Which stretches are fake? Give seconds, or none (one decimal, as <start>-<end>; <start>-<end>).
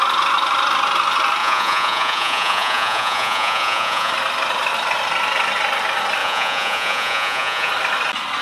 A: 1.4-4.1; 6.2-7.7